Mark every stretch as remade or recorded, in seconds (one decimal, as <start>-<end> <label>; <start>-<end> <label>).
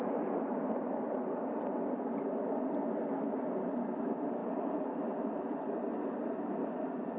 0.0-7.2 remade